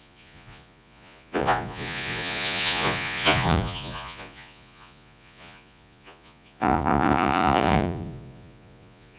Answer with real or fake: fake